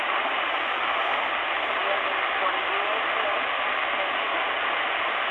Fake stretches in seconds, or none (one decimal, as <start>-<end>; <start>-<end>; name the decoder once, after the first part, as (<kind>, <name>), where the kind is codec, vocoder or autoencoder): none